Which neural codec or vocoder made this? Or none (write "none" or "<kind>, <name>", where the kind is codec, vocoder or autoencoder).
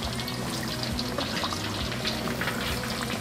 none